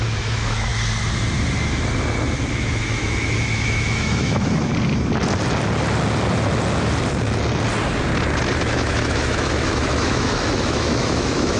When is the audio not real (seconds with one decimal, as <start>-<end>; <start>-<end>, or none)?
0.0-0.7; 2.5-4.7; 8.5-11.6